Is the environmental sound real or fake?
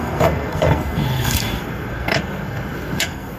fake